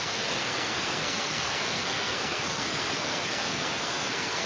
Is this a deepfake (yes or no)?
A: yes